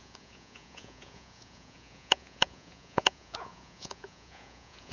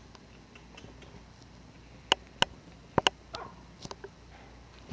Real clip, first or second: second